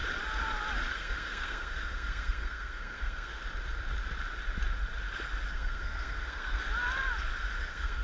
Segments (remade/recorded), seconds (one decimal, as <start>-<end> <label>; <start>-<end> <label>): 0.0-0.9 recorded; 0.9-3.4 remade; 3.4-5.5 recorded; 5.5-6.6 remade; 6.6-7.6 recorded; 7.6-8.0 remade